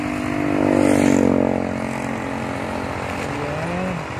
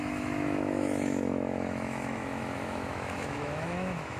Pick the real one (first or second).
first